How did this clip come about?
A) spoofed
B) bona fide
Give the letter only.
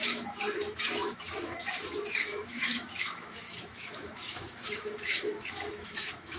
A